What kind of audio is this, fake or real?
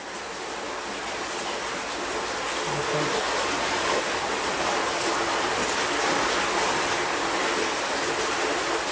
real